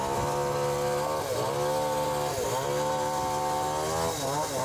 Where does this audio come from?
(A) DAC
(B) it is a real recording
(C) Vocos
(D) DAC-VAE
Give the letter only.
B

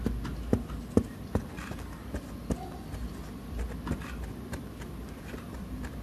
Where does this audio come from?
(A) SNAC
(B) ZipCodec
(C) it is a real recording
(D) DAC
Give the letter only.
C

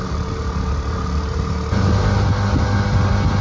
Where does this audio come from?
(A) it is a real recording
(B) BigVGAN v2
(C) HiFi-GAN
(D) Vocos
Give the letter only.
A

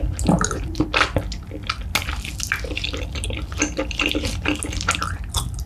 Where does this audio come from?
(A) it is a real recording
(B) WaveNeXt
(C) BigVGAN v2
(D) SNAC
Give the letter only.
A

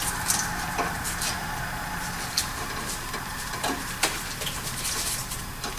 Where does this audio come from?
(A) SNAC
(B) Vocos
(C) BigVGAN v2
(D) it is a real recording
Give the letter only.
C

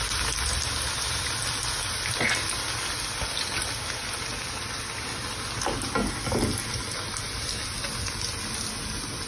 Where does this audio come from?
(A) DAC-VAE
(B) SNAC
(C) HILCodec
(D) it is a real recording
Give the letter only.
D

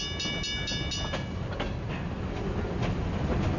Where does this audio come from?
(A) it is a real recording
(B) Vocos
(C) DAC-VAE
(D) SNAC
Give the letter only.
A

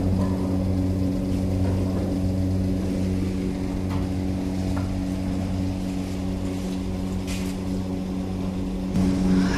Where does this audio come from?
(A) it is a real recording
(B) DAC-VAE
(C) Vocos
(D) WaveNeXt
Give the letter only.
A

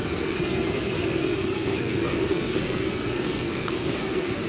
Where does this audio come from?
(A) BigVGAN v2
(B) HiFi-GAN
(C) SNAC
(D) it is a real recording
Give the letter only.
C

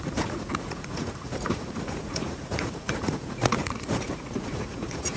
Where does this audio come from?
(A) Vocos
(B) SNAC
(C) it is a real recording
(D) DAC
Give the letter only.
A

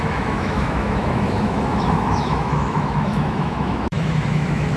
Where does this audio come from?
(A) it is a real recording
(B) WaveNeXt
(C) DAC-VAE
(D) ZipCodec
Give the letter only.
C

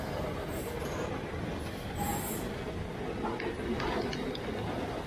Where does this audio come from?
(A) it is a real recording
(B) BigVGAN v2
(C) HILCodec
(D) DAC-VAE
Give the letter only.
A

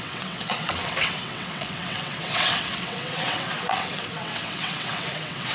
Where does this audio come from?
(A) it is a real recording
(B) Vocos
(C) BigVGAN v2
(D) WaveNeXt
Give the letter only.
D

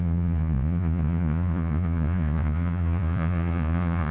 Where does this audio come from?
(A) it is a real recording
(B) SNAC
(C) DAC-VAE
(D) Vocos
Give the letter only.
D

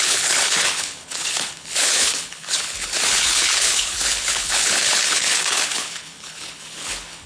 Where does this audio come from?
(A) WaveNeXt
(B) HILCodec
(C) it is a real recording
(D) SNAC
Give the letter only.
B